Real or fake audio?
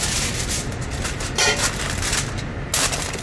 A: real